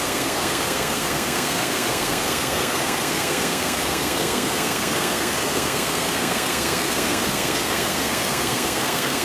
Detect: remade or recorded remade